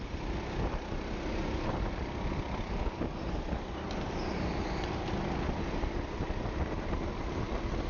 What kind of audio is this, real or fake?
real